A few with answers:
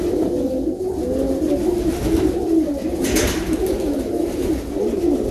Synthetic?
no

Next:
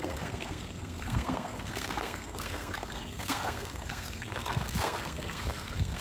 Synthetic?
yes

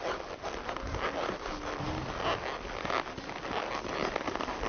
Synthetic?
no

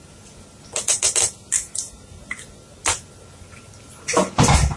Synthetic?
no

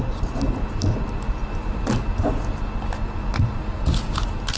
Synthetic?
no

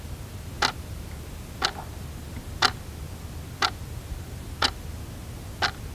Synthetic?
no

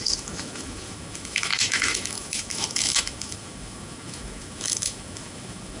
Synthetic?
yes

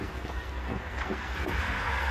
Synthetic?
yes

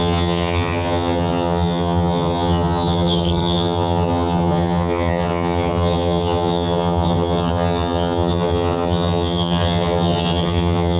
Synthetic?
yes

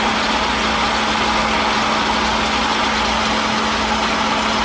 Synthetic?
no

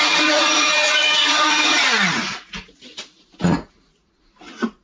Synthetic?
yes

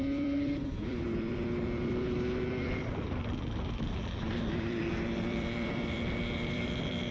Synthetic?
yes